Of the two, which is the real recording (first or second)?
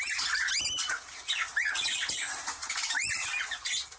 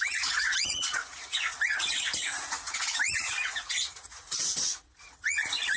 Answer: first